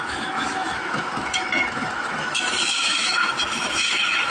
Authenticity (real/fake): fake